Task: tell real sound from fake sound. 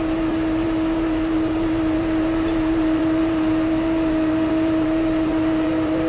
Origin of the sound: fake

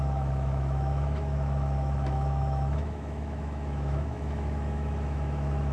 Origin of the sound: fake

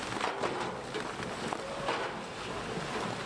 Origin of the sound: real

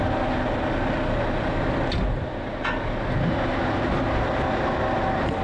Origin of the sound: real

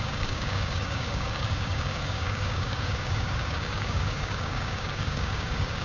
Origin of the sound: fake